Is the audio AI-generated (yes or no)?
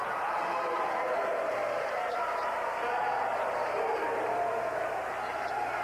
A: no